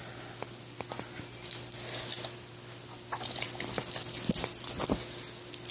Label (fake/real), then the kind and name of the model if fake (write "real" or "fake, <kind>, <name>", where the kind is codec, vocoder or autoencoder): real